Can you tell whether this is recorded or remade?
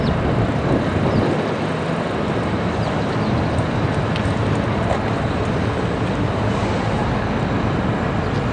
recorded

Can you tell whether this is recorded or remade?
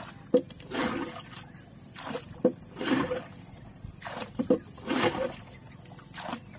remade